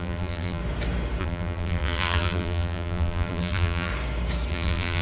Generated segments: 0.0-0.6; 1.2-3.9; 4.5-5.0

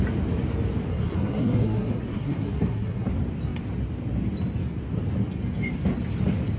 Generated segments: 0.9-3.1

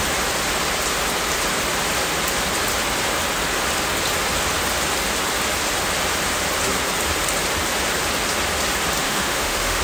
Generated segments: 9.0-9.8

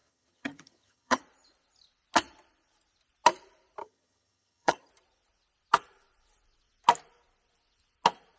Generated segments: 0.0-1.2; 3.8-4.9

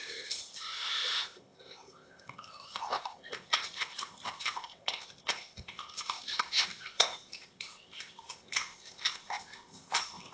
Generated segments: 0.0-10.3

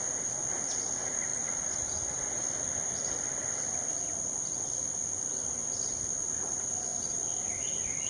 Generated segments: none

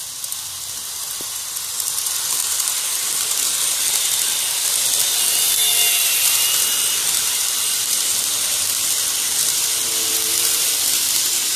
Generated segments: 2.4-3.4; 7.0-10.7